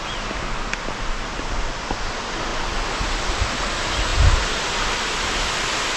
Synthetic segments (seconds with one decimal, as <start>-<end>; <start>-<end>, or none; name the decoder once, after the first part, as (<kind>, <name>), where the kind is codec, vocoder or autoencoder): none